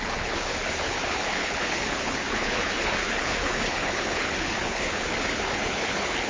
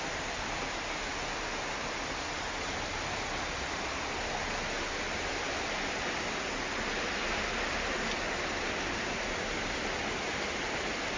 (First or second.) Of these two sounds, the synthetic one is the first